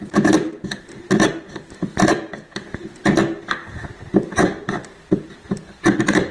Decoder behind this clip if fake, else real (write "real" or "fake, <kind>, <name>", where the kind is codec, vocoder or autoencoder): fake, vocoder, BigVGAN v2